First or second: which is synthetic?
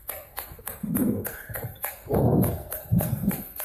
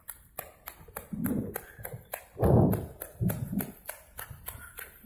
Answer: first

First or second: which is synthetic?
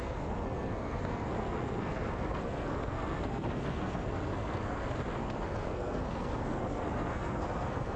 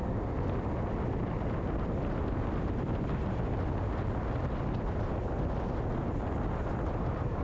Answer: first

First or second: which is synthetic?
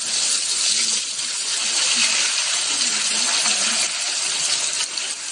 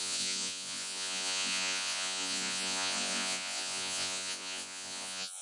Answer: second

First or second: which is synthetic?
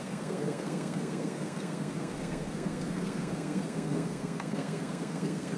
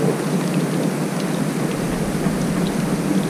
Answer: first